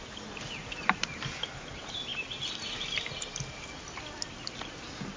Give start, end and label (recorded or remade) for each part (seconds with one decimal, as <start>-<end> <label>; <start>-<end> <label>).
0.0-5.2 recorded